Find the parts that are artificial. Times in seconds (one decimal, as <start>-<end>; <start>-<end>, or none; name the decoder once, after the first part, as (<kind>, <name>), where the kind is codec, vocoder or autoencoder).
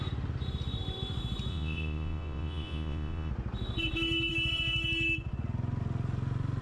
1.5-3.3 (vocoder, Vocos)